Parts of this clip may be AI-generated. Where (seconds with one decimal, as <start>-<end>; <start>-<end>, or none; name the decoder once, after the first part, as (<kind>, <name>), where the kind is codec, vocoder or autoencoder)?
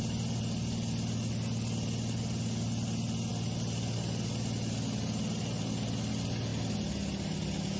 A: none